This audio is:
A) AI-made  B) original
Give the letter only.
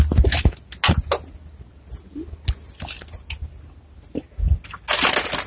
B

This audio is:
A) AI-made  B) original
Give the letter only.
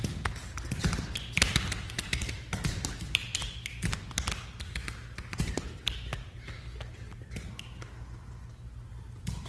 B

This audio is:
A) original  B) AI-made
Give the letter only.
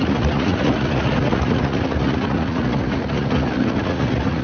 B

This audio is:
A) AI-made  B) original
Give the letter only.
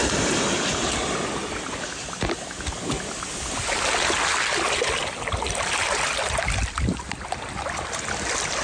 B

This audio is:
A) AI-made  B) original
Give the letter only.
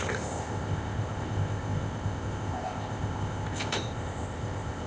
A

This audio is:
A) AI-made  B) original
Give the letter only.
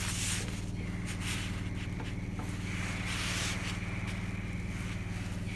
B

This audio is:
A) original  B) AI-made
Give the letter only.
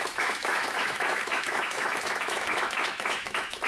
B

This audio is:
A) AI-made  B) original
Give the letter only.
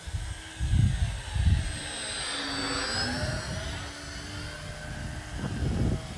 B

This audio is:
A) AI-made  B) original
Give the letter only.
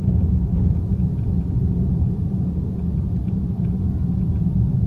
B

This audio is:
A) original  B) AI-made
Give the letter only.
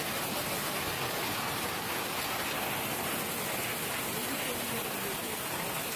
A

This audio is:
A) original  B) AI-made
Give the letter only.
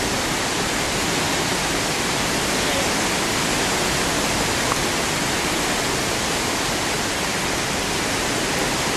A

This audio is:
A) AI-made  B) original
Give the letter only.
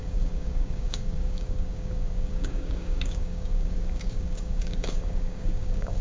A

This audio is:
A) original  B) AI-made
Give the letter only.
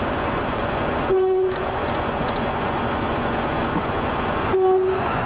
B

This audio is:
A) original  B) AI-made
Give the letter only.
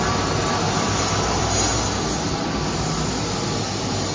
A